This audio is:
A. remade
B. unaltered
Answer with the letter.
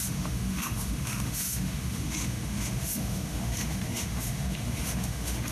A